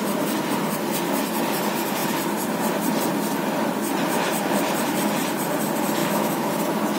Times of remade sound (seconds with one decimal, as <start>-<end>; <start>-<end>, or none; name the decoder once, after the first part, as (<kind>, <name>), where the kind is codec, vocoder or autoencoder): 6.0-6.5 (autoencoder, DAC-VAE)